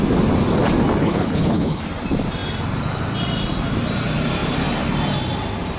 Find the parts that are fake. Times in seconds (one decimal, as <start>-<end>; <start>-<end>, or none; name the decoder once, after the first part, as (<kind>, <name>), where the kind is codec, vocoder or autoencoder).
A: 1.0-1.8 (codec, HILCodec)